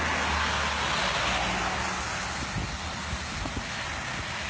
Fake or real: real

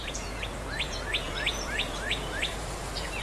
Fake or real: fake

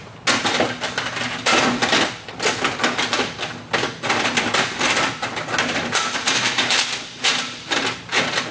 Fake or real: real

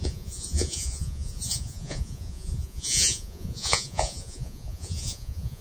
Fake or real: fake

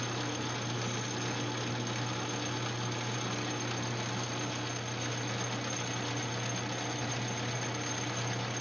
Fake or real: real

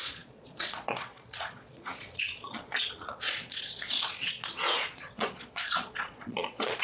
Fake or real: fake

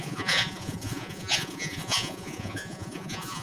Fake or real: fake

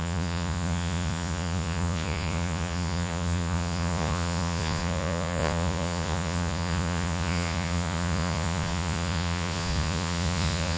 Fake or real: fake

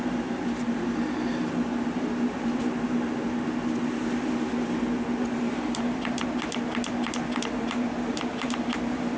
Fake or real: real